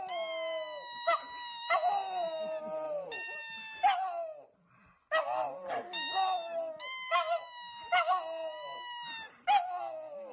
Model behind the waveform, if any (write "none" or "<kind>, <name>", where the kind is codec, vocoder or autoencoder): none